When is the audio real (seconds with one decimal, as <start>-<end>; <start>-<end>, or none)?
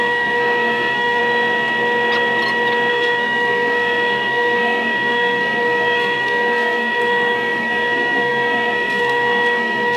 1.2-2.9